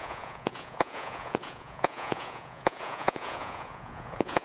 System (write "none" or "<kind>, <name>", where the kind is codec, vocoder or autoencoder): vocoder, Vocos